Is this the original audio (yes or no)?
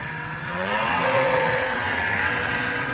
no